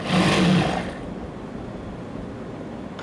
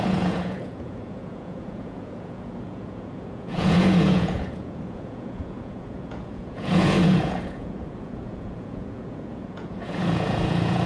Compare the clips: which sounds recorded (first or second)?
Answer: first